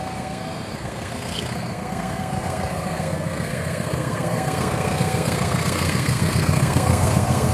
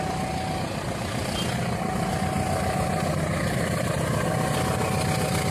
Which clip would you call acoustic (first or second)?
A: second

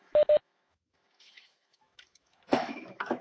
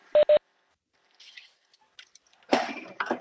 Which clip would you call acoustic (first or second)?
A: second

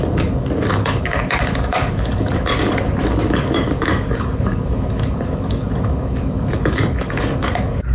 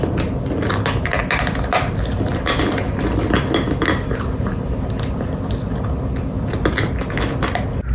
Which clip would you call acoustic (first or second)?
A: second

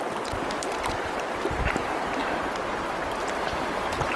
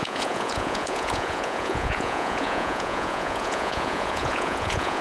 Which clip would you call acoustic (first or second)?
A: first